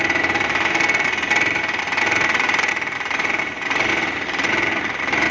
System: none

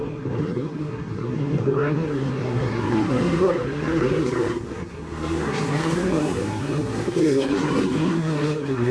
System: codec, SNAC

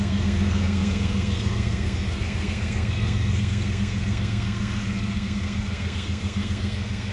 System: codec, SNAC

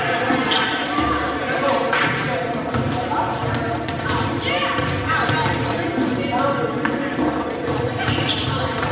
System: none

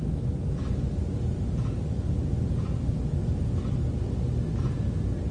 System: none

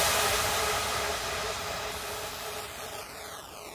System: none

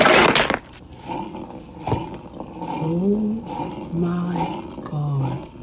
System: none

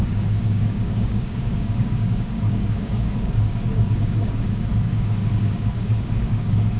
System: codec, DAC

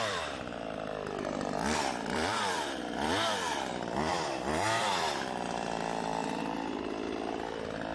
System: vocoder, BigVGAN v2